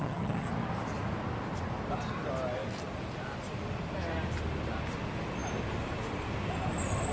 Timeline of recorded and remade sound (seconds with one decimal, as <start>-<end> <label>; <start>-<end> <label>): 0.0-0.5 remade; 0.5-7.1 recorded

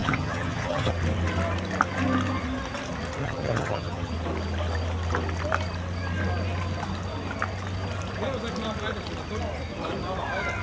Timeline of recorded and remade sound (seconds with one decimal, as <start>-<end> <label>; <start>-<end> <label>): 0.0-0.9 remade; 0.9-3.2 recorded; 3.2-4.1 remade; 4.1-10.6 recorded

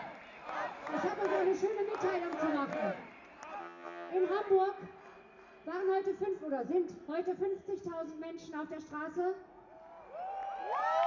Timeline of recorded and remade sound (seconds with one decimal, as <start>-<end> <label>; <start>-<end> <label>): 0.0-3.6 recorded; 3.6-4.1 remade; 4.1-11.1 recorded